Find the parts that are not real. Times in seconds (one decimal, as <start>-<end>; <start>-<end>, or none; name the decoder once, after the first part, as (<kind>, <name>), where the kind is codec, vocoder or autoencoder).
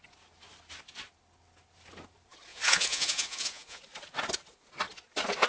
2.5-3.8 (vocoder, Vocos)